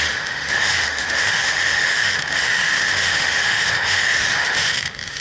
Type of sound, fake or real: fake